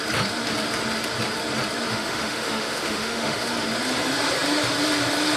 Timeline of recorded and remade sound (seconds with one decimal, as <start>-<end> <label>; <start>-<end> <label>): 0.0-1.9 recorded; 1.9-3.5 remade; 3.5-5.4 recorded